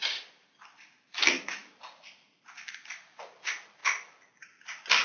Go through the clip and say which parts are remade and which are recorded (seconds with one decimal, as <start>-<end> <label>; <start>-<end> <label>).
0.0-0.5 remade; 0.5-5.0 recorded

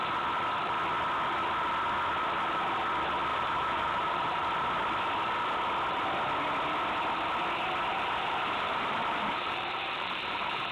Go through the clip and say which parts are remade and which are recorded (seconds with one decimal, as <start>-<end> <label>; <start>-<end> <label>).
0.0-3.3 recorded; 3.3-4.4 remade; 4.4-7.9 recorded; 7.9-10.7 remade